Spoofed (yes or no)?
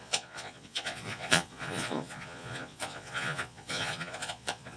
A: yes